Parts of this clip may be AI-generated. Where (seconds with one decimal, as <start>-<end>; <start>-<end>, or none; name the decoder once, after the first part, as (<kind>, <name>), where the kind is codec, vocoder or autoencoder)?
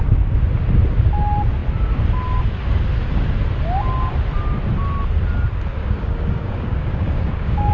5.8-7.7 (codec, DAC)